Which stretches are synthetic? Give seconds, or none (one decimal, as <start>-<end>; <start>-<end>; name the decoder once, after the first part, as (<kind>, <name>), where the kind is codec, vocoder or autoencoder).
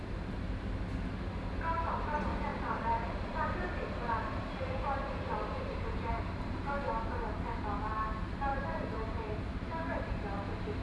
2.5-6.2 (vocoder, BigVGAN v2); 8.5-10.2